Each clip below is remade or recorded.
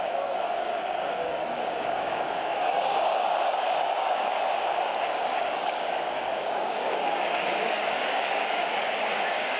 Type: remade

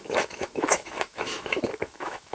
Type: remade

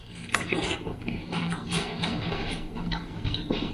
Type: remade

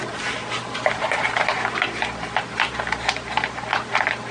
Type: recorded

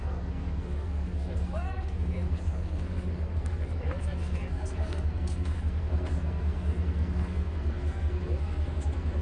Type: remade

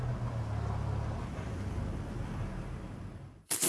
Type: remade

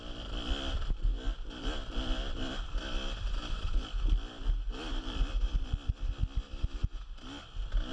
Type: recorded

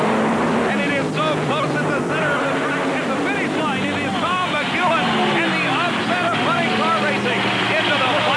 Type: recorded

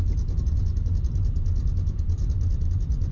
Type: remade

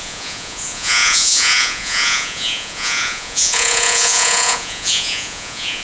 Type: remade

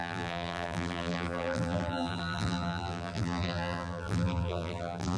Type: remade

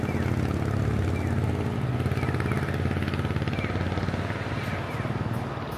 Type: recorded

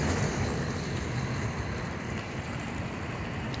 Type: recorded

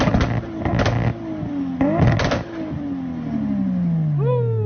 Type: recorded